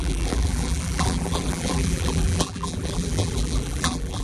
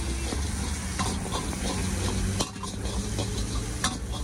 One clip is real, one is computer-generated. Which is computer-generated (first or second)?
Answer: first